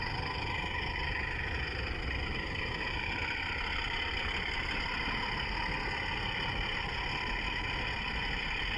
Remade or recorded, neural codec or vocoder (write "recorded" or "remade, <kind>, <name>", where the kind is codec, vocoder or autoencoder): recorded